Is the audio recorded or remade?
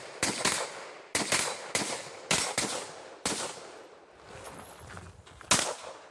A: recorded